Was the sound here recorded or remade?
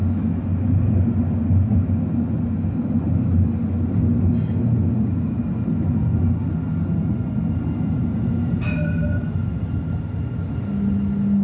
recorded